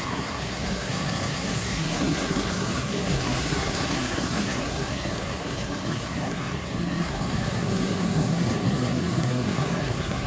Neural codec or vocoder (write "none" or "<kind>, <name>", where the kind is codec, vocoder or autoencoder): codec, SNAC